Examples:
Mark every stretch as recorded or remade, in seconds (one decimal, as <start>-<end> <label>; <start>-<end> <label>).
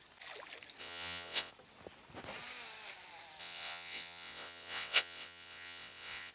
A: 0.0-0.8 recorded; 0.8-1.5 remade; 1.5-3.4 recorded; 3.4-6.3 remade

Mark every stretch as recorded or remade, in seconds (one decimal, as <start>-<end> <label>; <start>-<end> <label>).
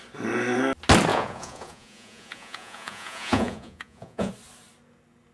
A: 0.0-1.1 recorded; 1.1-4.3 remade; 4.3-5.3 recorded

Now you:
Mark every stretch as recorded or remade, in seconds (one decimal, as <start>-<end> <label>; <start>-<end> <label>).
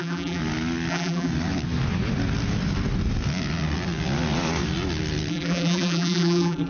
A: 0.0-0.4 remade; 0.4-0.9 recorded; 0.9-1.3 remade; 1.3-5.3 recorded; 5.3-6.7 remade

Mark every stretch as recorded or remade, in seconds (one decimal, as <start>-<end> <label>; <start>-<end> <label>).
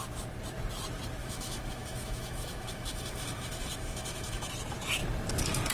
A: 0.0-1.2 recorded; 1.2-4.5 remade; 4.5-5.7 recorded